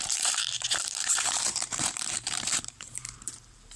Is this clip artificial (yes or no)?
yes